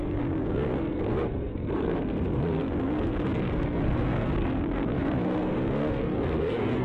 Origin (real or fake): fake